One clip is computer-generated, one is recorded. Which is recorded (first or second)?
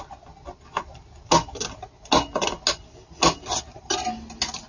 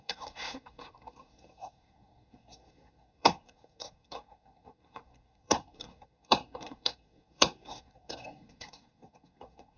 first